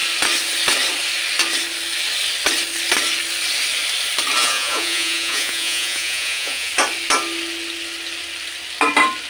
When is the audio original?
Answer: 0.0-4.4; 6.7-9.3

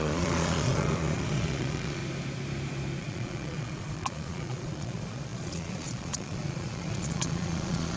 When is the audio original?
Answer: 2.0-3.0

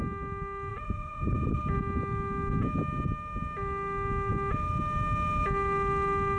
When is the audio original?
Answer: 0.0-0.7; 1.6-6.4

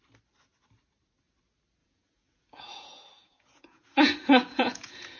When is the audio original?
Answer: 0.0-1.8

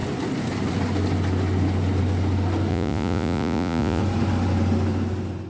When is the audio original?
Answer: 0.0-2.7; 4.0-5.5